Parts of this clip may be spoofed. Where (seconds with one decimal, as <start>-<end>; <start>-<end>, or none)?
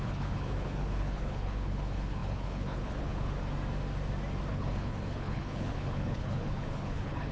0.0-3.4; 4.5-7.3